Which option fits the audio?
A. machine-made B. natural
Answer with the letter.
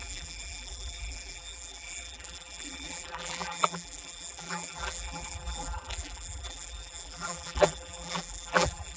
A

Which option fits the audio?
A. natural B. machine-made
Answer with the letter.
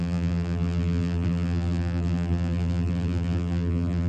B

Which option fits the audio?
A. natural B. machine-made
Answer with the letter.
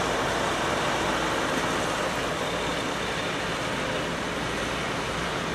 A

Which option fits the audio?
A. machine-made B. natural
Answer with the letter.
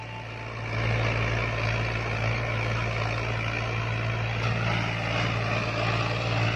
B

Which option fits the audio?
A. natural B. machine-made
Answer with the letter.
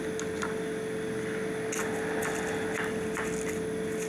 A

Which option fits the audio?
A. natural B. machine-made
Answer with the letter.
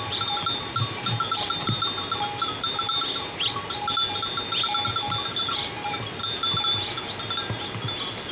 A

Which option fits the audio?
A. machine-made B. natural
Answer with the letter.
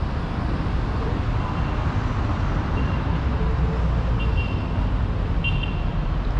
B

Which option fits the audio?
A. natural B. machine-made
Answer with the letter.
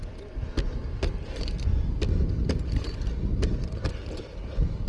A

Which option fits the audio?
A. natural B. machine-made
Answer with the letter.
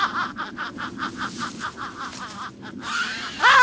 B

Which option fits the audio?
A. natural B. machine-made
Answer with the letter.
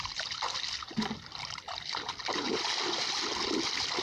A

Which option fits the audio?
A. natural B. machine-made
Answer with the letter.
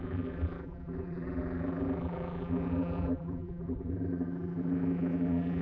B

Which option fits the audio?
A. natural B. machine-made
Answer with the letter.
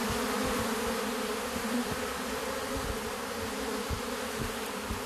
B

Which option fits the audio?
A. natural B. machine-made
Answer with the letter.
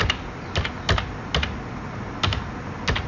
A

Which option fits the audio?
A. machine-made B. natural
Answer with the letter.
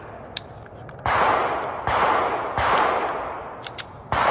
B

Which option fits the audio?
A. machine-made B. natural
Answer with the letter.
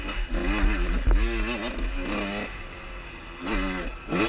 B